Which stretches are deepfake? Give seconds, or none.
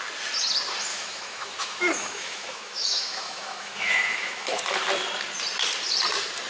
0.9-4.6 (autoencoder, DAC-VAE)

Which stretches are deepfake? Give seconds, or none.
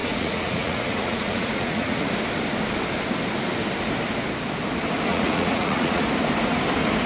0.0-2.1 (vocoder, Vocos); 5.1-6.0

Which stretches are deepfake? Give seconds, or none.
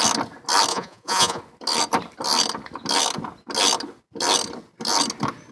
0.7-1.4 (vocoder, Vocos)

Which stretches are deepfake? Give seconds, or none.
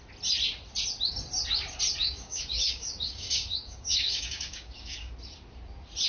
2.0-5.1 (codec, DAC)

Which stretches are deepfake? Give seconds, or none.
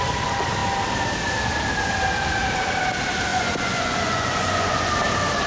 3.3-4.9 (vocoder, Vocos)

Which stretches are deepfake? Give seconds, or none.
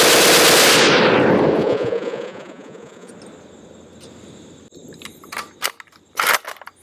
1.6-3.1 (vocoder, Vocos)